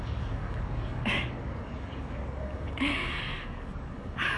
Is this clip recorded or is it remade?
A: remade